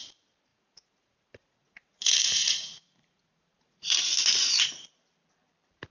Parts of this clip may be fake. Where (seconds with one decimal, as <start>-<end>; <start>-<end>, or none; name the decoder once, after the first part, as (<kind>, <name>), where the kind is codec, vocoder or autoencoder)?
0.5-4.0 (vocoder, Vocos)